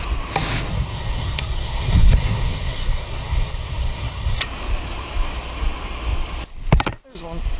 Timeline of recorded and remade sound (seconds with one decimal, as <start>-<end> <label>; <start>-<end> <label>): 0.0-0.7 recorded; 0.7-4.4 remade; 4.4-7.6 recorded